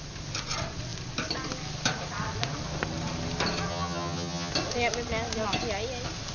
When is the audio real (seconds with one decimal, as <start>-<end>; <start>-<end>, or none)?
0.0-3.7; 4.5-6.3